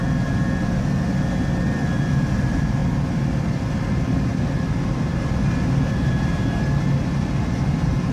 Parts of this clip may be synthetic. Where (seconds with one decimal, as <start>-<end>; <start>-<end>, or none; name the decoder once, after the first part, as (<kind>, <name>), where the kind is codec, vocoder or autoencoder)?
2.2-2.8 (vocoder, BigVGAN v2); 3.6-4.3